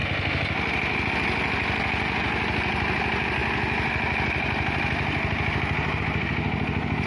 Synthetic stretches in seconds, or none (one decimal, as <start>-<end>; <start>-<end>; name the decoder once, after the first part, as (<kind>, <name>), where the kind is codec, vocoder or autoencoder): none